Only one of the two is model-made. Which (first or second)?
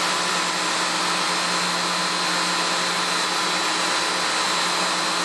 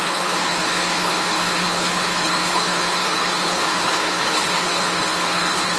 second